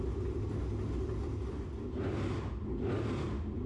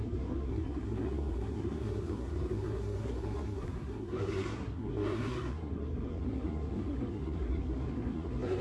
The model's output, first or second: second